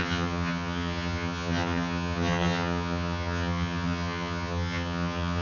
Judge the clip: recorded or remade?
remade